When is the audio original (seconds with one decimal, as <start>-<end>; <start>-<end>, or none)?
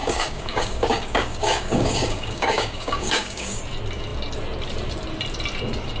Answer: 3.6-6.0